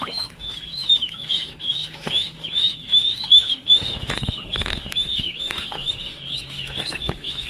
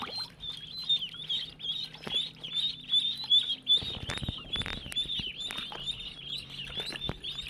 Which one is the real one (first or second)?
second